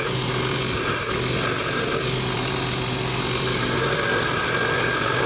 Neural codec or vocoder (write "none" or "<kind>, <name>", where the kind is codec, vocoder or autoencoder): none